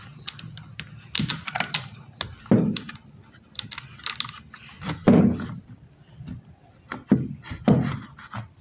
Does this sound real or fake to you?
real